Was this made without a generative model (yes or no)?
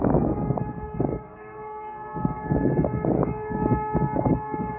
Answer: no